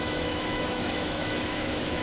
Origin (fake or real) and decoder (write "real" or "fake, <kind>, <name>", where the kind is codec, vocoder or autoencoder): fake, autoencoder, DAC-VAE